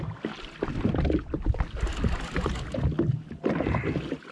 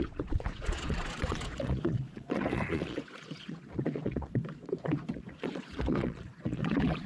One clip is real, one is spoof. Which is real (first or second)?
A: first